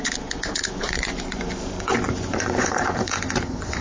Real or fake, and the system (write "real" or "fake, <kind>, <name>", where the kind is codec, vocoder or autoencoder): fake, vocoder, Vocos